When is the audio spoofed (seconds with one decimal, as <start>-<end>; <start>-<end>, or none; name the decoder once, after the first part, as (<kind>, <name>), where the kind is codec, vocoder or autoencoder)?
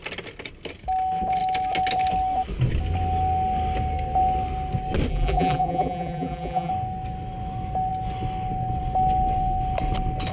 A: 5.1-6.7 (vocoder, BigVGAN v2)